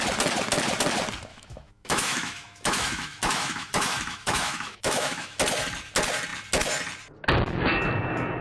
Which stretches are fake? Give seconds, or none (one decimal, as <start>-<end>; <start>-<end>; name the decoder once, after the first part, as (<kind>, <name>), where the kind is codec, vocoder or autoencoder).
1.3-5.4 (autoencoder, DAC-VAE)